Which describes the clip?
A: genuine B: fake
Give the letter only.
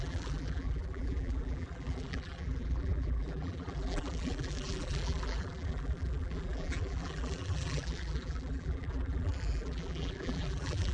B